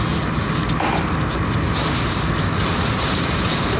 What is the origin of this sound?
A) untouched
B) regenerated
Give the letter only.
A